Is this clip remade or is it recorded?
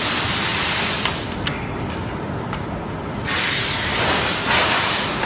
recorded